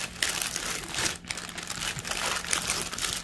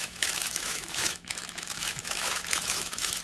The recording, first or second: first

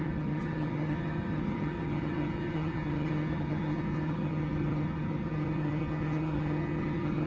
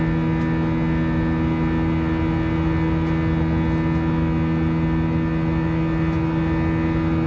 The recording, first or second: second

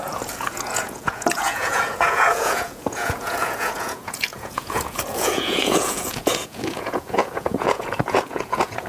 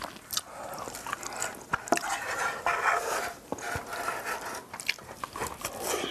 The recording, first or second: second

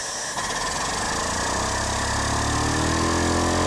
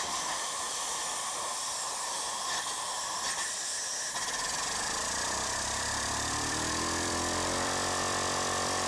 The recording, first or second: first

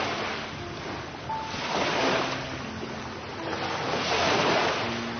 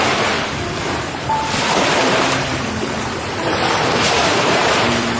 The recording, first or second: first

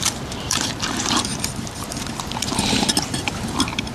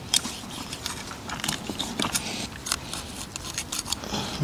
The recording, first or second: second